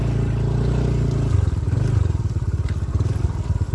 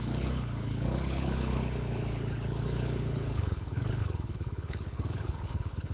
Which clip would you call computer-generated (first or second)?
second